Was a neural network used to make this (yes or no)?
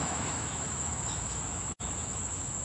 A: yes